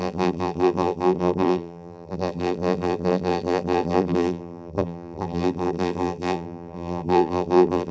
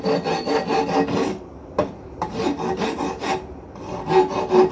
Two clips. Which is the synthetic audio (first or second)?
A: first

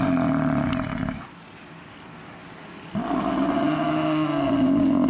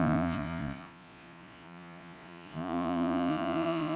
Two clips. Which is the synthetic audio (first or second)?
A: second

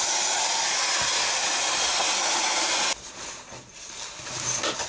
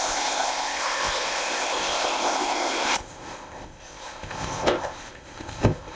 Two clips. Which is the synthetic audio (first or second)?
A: second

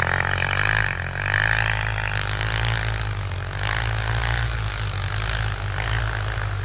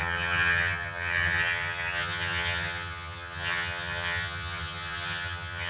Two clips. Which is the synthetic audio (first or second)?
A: second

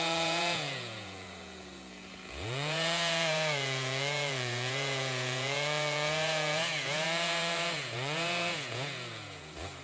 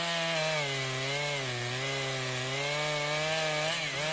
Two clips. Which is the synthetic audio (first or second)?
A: first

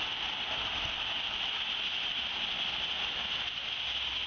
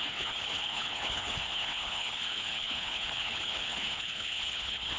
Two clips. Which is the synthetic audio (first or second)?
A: second